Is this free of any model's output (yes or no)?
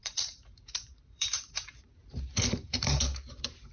no